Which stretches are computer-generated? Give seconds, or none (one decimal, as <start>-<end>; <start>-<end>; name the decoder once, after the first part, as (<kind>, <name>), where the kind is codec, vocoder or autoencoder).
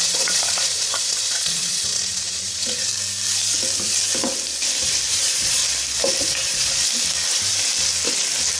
0.0-2.9 (vocoder, Vocos); 5.1-5.6; 6.2-6.8